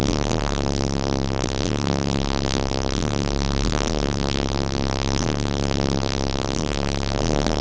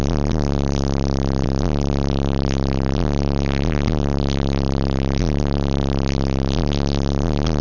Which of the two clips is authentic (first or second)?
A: second